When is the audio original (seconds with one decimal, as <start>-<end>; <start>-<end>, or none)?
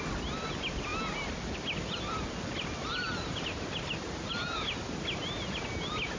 0.0-6.2